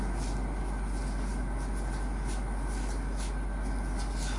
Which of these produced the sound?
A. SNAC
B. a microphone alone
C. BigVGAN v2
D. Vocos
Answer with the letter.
B